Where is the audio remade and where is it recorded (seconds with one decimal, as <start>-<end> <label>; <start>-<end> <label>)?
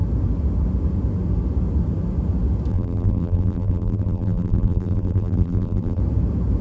0.0-2.7 recorded; 2.7-6.0 remade; 6.0-6.6 recorded